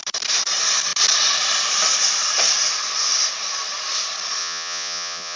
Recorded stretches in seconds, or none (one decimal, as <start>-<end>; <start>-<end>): 0.0-4.4